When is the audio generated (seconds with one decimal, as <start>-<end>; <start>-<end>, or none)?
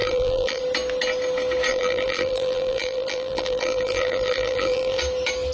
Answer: 0.0-0.6; 1.7-5.0